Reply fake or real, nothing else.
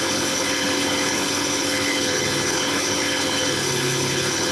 fake